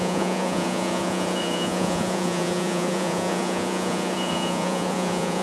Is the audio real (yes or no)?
no